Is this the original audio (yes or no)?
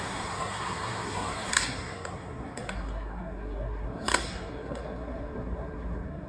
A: no